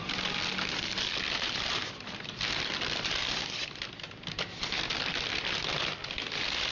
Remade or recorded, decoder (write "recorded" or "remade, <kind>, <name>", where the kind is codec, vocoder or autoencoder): recorded